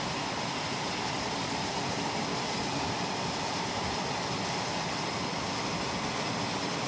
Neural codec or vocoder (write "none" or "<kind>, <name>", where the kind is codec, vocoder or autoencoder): none